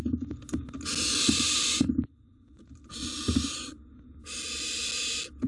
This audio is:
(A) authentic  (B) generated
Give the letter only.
A